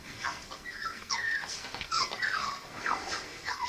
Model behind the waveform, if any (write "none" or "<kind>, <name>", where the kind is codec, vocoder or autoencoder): codec, SNAC